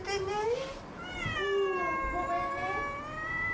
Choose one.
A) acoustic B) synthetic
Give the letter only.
A